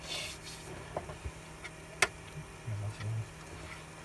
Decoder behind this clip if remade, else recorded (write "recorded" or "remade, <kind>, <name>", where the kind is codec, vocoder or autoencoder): recorded